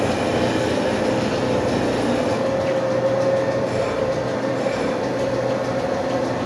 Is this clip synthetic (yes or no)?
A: no